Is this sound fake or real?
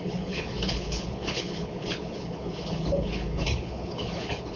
fake